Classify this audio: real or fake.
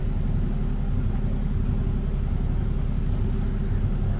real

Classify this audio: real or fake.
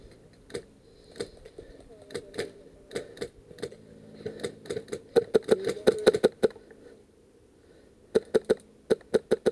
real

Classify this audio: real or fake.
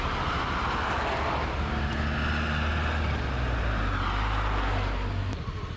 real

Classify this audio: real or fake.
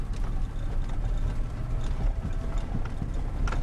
real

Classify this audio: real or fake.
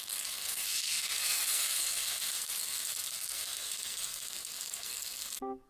fake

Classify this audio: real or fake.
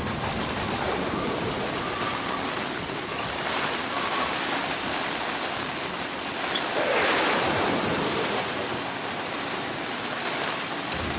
real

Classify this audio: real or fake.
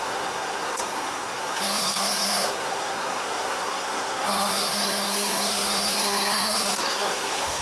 fake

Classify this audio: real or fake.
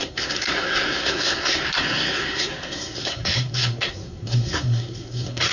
fake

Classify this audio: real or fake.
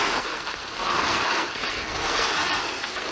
fake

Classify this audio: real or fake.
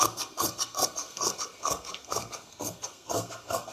fake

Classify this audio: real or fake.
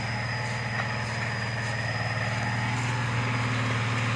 real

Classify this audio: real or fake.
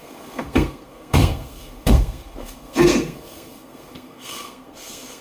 fake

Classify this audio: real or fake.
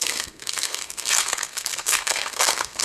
fake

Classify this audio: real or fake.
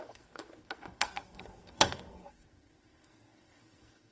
fake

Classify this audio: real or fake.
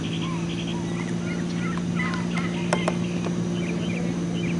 real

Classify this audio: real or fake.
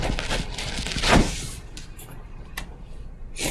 real